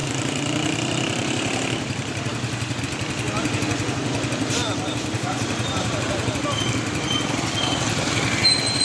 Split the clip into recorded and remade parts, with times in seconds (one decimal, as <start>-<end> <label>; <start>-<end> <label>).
0.0-2.8 remade; 2.8-4.6 recorded; 4.6-6.3 remade; 6.3-8.8 recorded